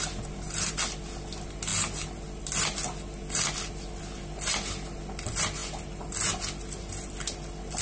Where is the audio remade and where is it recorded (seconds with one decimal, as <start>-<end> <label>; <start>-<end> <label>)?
0.0-7.8 recorded

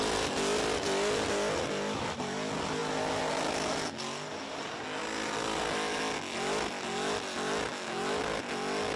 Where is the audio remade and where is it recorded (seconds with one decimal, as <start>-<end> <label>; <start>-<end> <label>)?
0.0-7.7 recorded; 7.7-8.2 remade; 8.2-9.0 recorded

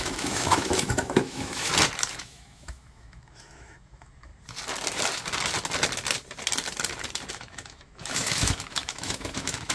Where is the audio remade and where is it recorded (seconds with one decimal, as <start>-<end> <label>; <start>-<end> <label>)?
0.0-1.7 remade; 1.7-2.2 recorded; 2.2-4.3 remade; 4.3-7.3 recorded; 7.3-9.7 remade

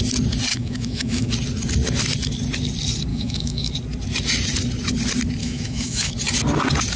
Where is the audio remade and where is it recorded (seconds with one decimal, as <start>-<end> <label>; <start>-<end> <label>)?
0.0-0.5 recorded; 0.5-1.3 remade; 1.3-3.1 recorded; 3.1-3.7 remade; 3.7-5.4 recorded; 5.4-6.1 remade; 6.1-7.0 recorded

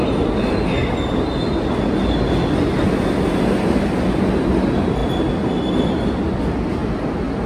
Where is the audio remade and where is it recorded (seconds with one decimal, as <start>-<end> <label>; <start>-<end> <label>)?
0.0-7.5 recorded

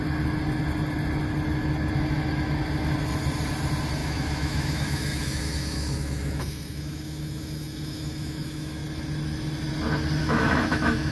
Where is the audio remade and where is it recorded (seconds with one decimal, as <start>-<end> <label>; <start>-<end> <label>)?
0.0-4.0 recorded; 4.0-8.8 remade; 8.8-10.2 recorded; 10.2-11.1 remade

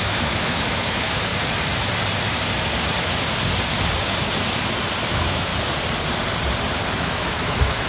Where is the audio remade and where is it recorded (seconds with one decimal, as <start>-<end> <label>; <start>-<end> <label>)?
0.0-1.3 remade; 1.3-5.1 recorded; 5.1-5.5 remade; 5.5-7.0 recorded; 7.0-7.9 remade